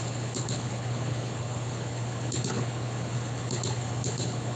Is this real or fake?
fake